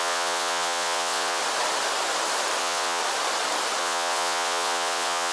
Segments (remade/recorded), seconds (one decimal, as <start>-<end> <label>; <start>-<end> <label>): 0.0-1.4 remade; 1.4-2.6 recorded; 2.6-3.0 remade; 3.0-3.8 recorded; 3.8-5.3 remade